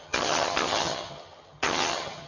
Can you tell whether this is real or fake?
fake